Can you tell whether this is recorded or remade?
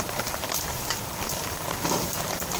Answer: remade